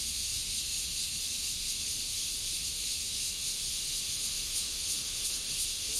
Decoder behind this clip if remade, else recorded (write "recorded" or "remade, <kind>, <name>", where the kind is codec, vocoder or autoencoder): remade, autoencoder, DAC-VAE